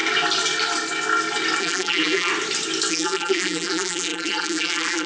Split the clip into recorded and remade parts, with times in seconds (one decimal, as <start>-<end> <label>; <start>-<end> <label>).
0.0-1.6 recorded; 1.6-2.3 remade; 2.3-2.9 recorded; 2.9-5.1 remade